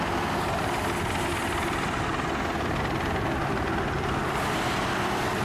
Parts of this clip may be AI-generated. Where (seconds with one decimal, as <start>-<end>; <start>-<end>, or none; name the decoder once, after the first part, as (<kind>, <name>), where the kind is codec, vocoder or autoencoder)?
none

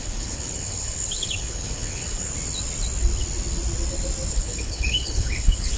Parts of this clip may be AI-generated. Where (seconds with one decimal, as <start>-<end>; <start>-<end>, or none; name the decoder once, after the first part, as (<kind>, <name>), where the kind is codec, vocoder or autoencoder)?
0.0-2.3 (codec, HILCodec); 4.3-5.8

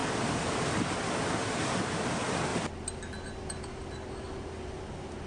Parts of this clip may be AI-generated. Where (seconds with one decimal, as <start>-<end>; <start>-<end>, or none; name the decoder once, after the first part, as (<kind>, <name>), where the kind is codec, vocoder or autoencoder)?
1.6-2.1 (vocoder, BigVGAN v2)

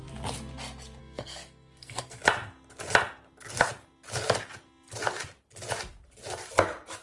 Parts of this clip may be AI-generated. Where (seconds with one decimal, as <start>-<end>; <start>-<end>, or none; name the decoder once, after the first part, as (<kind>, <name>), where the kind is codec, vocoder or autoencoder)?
1.0-2.2 (codec, SNAC)